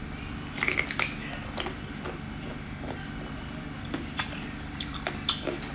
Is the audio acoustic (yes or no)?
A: yes